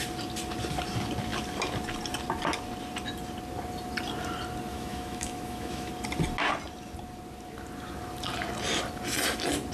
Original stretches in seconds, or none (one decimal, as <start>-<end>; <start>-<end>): 0.0-4.7; 5.9-9.7